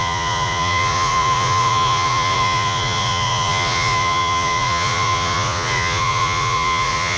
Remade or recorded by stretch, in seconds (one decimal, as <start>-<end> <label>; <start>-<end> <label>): 0.0-7.2 remade